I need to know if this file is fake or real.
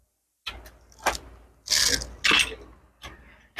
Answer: real